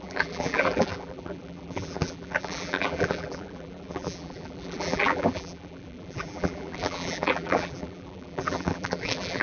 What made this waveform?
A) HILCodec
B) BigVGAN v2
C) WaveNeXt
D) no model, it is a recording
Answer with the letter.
B